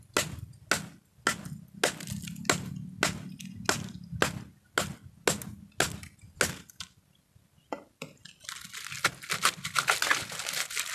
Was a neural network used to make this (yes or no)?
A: no